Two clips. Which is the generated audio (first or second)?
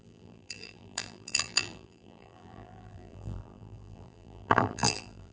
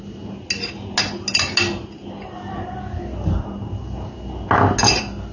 first